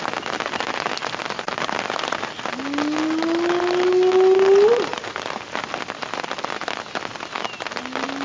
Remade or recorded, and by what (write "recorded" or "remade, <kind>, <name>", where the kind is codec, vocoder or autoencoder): recorded